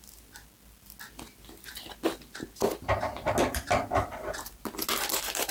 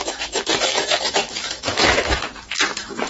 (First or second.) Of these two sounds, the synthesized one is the second